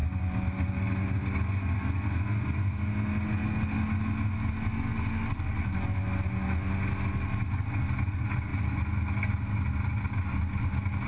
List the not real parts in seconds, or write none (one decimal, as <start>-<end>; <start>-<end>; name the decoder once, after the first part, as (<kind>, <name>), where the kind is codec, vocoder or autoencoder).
none

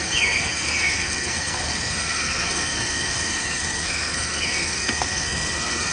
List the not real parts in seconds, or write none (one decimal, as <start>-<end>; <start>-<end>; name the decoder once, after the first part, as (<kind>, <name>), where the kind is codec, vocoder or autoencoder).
0.0-5.9 (codec, SNAC)

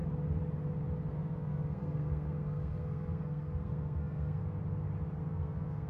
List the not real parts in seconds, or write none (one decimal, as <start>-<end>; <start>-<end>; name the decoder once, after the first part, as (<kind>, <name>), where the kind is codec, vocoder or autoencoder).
1.1-4.4 (codec, SNAC); 5.2-5.9

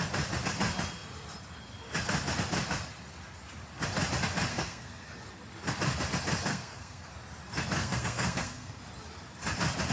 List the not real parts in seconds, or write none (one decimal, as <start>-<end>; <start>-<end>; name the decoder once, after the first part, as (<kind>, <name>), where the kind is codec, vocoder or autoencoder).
4.5-5.1 (codec, SNAC); 6.5-7.1; 7.8-8.8

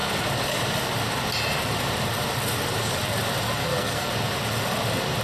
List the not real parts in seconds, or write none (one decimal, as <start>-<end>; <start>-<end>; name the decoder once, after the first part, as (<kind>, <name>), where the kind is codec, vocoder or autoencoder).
3.6-4.1 (codec, SNAC)